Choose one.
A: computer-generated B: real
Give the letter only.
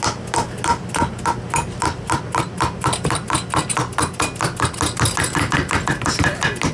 B